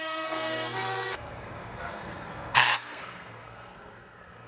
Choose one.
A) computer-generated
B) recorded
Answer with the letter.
A